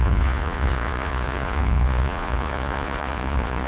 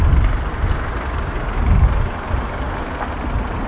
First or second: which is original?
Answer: second